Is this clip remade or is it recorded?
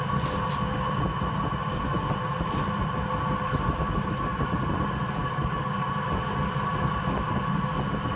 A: recorded